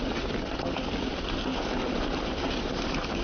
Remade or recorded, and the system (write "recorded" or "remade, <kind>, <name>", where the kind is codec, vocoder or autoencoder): recorded